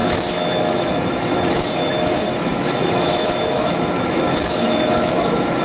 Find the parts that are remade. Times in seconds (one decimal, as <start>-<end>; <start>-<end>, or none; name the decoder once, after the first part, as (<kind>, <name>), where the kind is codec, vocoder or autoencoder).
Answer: 0.0-5.6 (autoencoder, DAC-VAE)